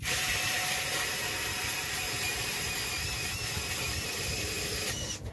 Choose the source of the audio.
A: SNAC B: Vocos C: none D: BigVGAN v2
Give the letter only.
C